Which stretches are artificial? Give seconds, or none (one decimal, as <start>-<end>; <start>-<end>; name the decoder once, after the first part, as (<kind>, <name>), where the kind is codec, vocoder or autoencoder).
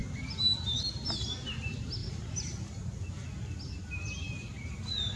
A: none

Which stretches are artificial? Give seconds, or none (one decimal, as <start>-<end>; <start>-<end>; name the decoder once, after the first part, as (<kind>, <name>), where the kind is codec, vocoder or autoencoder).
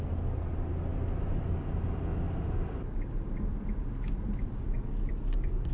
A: 2.1-5.7 (vocoder, BigVGAN v2)